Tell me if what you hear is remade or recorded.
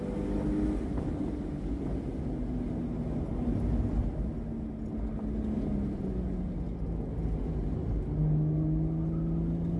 recorded